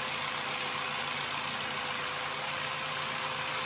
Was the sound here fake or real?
real